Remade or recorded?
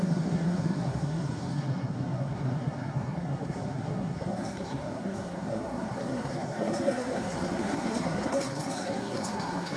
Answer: remade